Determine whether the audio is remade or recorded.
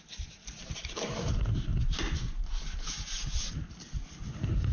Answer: recorded